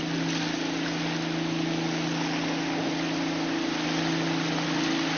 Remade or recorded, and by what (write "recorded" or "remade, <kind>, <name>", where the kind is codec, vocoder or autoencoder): recorded